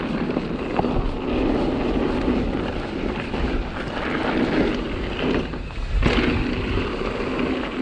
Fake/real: real